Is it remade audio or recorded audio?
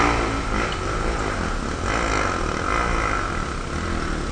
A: recorded